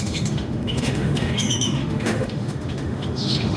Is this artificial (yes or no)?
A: yes